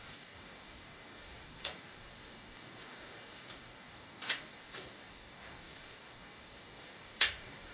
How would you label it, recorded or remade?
remade